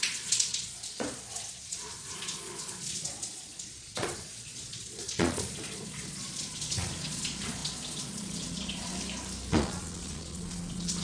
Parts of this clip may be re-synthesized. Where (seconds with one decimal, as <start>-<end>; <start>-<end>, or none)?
0.0-8.9; 9.5-11.0

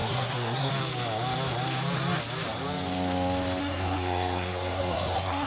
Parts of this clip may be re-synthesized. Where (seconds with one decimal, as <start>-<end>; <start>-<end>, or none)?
0.0-0.7; 3.6-5.5

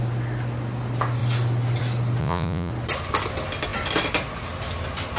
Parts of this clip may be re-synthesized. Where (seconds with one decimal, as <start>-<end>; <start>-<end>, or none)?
2.2-2.7

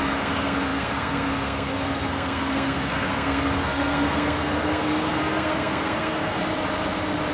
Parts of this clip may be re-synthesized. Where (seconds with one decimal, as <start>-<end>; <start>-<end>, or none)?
0.0-6.4

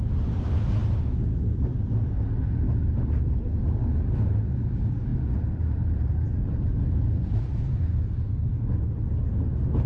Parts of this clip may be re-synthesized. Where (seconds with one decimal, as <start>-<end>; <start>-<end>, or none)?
5.1-8.0

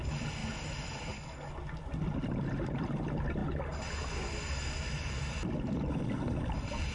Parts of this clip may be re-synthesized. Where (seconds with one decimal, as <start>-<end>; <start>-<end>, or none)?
none